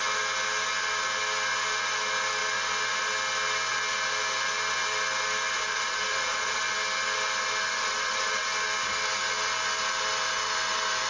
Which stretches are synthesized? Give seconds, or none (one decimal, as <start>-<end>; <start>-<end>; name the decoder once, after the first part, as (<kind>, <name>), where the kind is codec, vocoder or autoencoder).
5.6-6.6 (vocoder, Vocos); 7.8-8.4